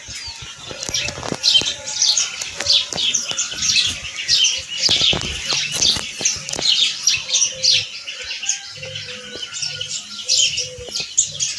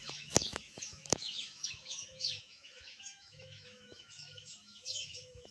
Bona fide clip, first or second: first